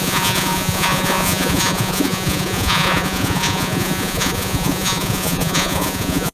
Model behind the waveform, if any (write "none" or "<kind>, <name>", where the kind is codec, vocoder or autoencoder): vocoder, Vocos